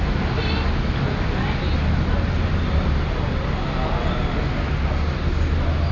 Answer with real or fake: real